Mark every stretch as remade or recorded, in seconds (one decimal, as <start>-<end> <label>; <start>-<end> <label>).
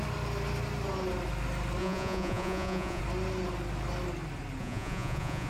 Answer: 0.0-1.8 recorded; 1.8-3.0 remade; 3.0-4.6 recorded; 4.6-5.5 remade